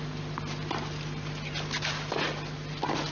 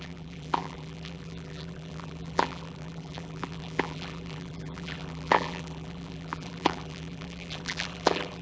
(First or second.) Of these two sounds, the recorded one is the first